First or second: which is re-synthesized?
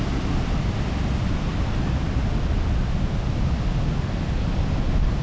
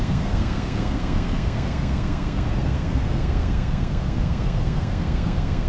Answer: second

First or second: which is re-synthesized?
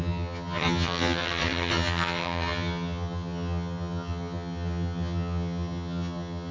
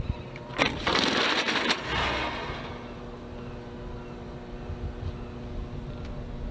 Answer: first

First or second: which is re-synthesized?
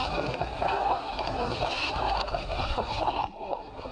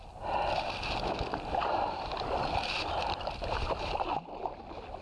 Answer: first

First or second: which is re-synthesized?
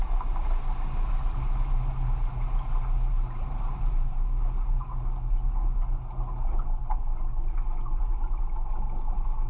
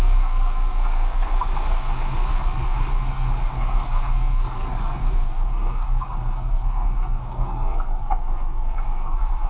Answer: second